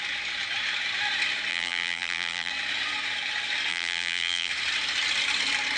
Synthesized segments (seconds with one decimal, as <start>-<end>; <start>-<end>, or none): 1.5-2.5; 3.7-4.5